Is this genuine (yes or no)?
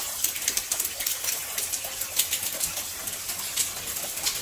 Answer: yes